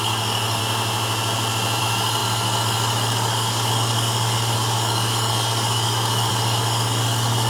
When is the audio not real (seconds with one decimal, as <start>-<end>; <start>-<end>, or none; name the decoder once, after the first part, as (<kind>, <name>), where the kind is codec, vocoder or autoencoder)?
0.0-0.6 (codec, DAC); 1.8-7.5